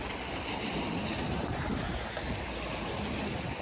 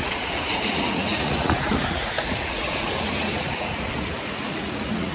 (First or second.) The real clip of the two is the first